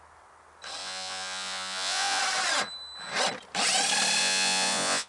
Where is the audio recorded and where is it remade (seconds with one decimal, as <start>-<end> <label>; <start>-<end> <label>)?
0.0-0.8 recorded; 0.8-2.2 remade; 2.2-4.2 recorded; 4.2-5.1 remade